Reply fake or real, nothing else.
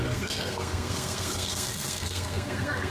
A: fake